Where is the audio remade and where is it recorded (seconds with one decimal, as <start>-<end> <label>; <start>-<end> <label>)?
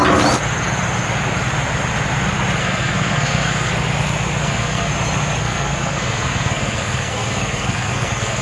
0.0-2.6 recorded; 2.6-3.7 remade; 3.7-4.4 recorded; 4.4-4.9 remade; 4.9-5.4 recorded; 5.4-8.4 remade